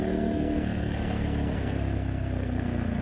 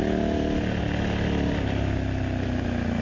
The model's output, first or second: first